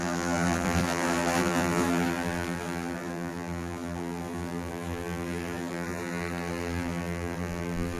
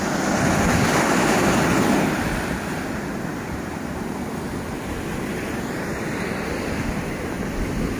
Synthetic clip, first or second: first